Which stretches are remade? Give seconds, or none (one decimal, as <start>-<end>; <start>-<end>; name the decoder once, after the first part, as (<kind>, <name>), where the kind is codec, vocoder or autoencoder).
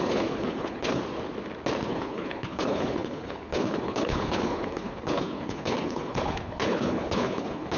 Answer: 0.0-1.0 (codec, HILCodec); 1.9-7.8